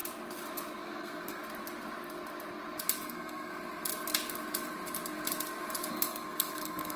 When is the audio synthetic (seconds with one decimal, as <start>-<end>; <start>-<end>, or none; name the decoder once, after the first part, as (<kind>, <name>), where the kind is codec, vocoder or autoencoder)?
0.8-1.4 (codec, SNAC); 3.1-3.5; 5.9-7.0